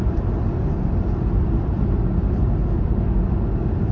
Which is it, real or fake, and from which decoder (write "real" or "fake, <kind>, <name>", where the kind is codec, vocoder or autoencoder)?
real